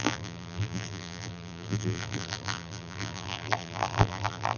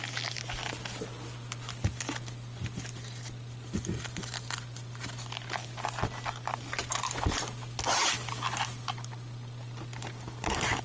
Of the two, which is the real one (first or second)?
second